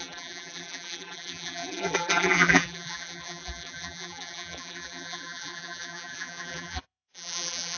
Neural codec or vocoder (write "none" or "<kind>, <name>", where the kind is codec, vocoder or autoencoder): vocoder, BigVGAN v2